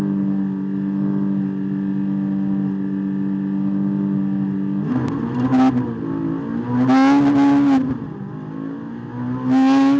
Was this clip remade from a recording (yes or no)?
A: no